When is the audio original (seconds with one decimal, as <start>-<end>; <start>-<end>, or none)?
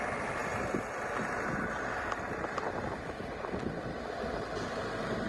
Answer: 0.0-5.3